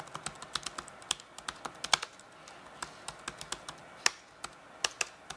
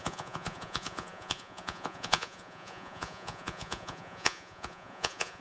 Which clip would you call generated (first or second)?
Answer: second